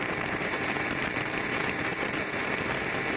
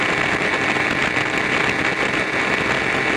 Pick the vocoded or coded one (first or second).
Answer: first